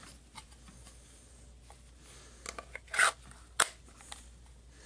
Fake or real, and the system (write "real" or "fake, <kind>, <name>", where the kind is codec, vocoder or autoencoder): real